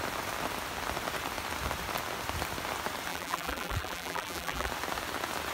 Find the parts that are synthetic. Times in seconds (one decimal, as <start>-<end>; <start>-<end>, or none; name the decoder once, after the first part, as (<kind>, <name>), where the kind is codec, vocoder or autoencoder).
3.1-4.7 (vocoder, BigVGAN v2)